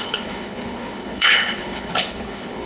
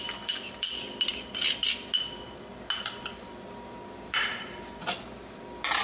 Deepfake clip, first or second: first